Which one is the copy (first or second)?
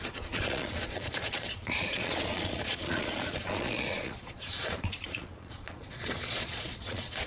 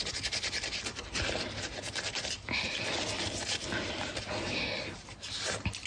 first